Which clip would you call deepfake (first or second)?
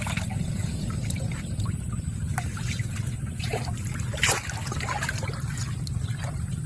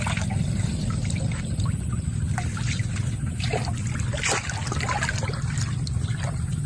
first